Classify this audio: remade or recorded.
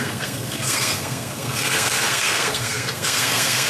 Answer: remade